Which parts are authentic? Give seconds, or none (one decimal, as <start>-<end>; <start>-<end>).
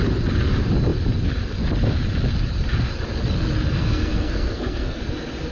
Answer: 0.0-3.8; 5.0-5.5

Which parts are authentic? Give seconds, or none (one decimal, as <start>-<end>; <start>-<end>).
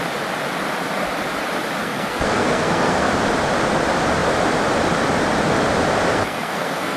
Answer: 0.0-1.8; 3.1-6.1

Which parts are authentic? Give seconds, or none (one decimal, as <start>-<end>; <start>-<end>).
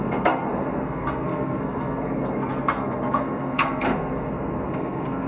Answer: none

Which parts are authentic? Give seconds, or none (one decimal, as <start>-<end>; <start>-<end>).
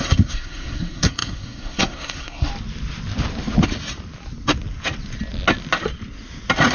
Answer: 2.5-6.7